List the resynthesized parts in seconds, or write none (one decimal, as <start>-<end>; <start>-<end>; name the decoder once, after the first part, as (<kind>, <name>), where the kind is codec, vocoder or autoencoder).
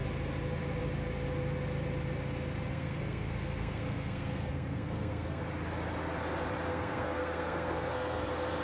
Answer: 2.7-5.4 (codec, SNAC); 6.7-8.2